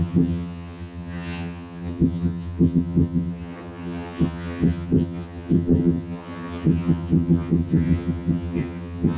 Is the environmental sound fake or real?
fake